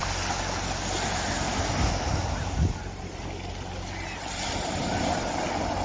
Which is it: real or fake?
real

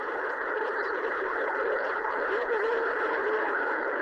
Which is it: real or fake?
fake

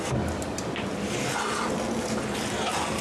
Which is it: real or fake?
real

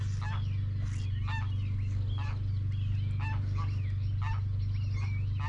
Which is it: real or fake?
real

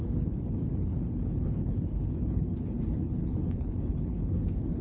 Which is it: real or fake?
fake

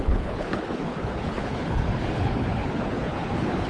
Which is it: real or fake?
fake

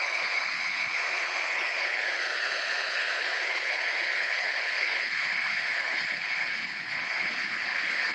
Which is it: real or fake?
fake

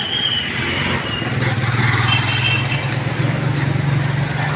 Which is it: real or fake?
real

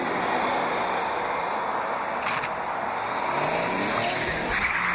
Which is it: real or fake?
real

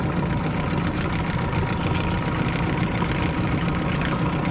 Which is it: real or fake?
real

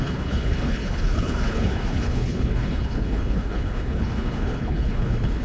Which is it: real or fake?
fake